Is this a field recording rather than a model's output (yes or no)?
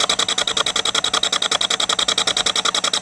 yes